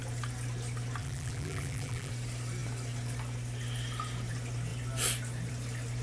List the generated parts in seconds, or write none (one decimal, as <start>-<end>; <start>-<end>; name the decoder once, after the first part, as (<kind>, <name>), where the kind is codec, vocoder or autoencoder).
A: 1.0-2.1 (vocoder, BigVGAN v2)